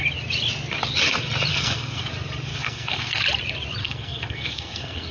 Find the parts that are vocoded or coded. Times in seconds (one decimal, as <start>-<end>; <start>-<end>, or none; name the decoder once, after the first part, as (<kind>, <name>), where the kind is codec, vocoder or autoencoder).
1.5-2.1 (codec, SNAC); 2.5-3.2; 3.8-5.1